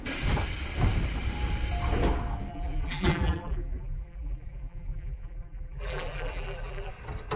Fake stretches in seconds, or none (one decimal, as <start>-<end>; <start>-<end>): 2.5-6.9